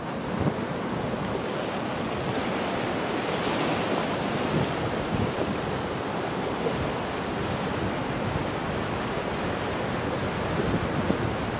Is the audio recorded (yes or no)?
yes